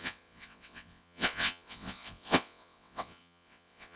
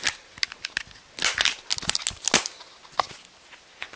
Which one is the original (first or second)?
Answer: second